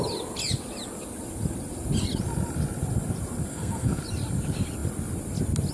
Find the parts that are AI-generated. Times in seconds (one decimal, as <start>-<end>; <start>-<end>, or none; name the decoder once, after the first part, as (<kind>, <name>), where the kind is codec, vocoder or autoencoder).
3.5-4.0 (codec, SNAC)